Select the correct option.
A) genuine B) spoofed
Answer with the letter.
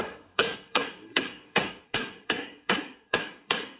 B